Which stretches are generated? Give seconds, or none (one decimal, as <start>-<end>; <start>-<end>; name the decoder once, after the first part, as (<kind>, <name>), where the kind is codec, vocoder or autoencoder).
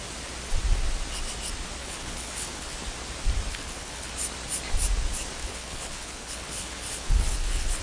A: 1.8-2.8 (codec, HILCodec); 3.5-4.1; 5.4-7.8